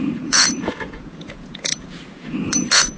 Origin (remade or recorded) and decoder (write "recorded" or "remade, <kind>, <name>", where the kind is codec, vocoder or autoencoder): remade, vocoder, Vocos